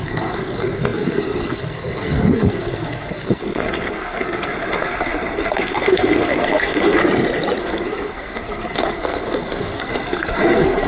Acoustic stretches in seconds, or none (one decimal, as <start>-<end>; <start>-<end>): 7.0-7.6